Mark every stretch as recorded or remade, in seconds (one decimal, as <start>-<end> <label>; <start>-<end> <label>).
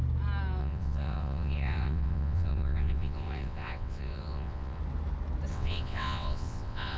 0.0-0.6 recorded; 0.6-4.8 remade; 4.8-5.5 recorded; 5.5-7.0 remade